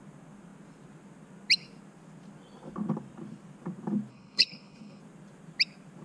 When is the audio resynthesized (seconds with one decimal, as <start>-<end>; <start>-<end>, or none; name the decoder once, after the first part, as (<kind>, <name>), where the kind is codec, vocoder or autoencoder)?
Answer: 4.1-5.0 (codec, HILCodec)